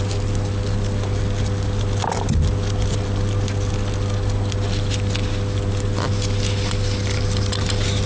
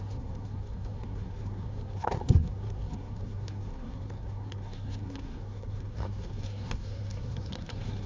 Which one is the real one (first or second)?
first